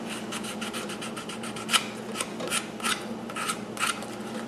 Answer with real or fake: real